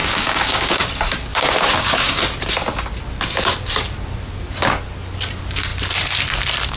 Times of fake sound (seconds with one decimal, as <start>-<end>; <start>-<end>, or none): 0.0-0.9; 1.3-2.2